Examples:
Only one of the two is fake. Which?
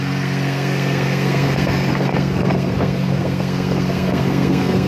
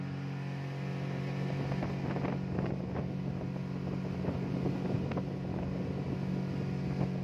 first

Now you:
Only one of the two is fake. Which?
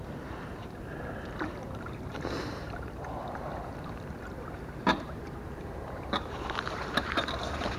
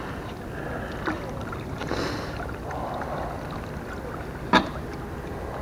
first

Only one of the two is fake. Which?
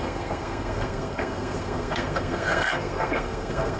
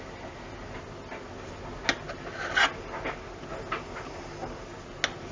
first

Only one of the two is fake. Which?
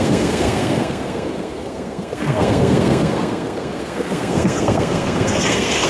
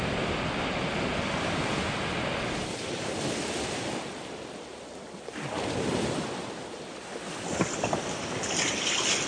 first